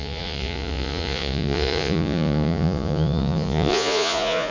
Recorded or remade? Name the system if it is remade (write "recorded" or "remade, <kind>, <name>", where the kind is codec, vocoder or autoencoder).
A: remade, vocoder, Vocos